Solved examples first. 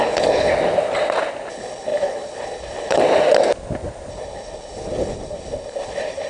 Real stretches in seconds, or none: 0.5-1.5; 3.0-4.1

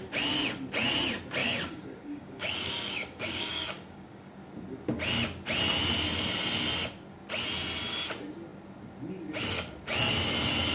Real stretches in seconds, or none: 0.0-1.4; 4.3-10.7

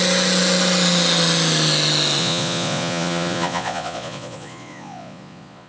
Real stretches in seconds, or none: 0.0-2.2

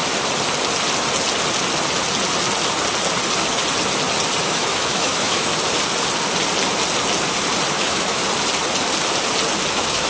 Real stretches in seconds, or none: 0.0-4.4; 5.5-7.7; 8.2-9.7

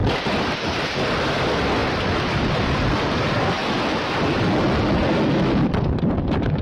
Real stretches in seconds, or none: 0.0-0.6; 3.6-6.1

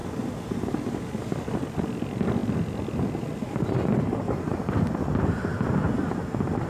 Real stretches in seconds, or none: 0.0-6.7

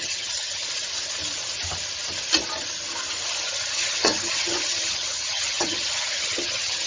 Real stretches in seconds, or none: 0.6-3.5

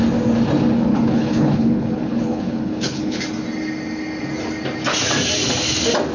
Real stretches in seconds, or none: 0.0-0.9; 3.2-6.1